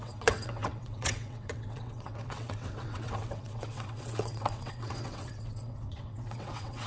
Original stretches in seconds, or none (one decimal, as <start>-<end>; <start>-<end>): none